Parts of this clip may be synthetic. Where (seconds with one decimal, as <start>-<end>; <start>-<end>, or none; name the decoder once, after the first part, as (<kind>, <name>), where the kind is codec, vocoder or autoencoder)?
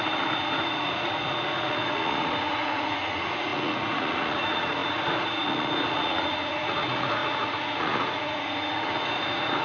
0.0-9.6 (vocoder, Vocos)